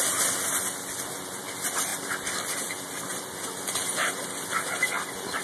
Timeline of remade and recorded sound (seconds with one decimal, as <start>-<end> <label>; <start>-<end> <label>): 0.0-5.4 recorded